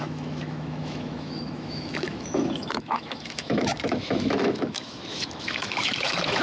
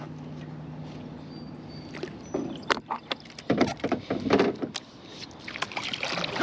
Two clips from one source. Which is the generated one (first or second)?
first